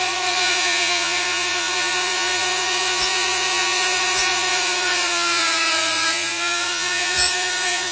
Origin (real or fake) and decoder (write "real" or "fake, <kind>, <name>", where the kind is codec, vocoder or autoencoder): fake, vocoder, Vocos